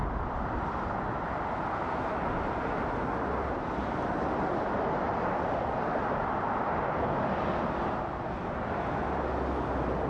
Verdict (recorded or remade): recorded